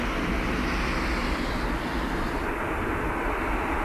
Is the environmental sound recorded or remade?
recorded